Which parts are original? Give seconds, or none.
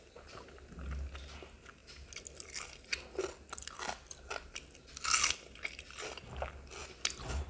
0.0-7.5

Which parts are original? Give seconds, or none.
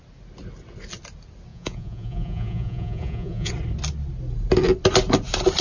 0.0-1.5; 3.5-5.6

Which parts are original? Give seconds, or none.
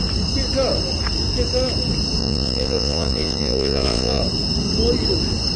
0.0-2.2; 4.2-5.6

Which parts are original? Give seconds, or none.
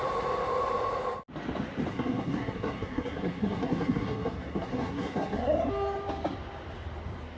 0.0-1.9; 5.7-7.4